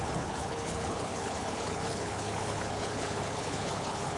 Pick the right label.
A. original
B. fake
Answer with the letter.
B